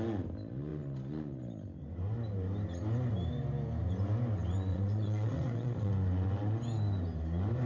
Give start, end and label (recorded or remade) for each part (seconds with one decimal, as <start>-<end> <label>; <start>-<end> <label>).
0.0-4.7 recorded; 4.7-5.9 remade; 5.9-7.7 recorded